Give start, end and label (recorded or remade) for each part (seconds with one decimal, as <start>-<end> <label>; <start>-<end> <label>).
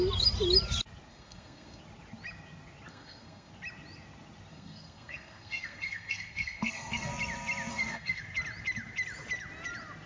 0.0-1.1 recorded; 1.1-1.8 remade; 1.8-2.9 recorded; 2.9-3.5 remade; 3.5-4.5 recorded; 4.5-7.1 remade; 7.1-7.7 recorded; 7.7-8.2 remade; 8.2-10.1 recorded